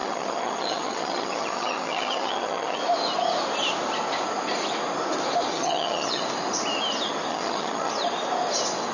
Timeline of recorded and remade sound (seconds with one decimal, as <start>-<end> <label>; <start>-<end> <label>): 0.0-2.8 remade; 2.8-5.5 recorded; 5.5-6.2 remade; 6.2-7.3 recorded; 7.3-7.9 remade; 7.9-8.9 recorded